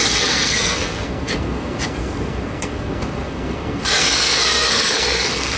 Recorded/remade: remade